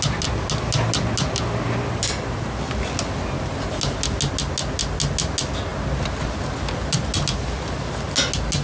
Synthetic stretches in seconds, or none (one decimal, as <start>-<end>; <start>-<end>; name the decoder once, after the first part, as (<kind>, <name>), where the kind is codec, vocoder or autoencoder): none